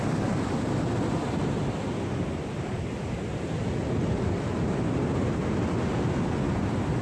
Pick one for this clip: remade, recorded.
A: recorded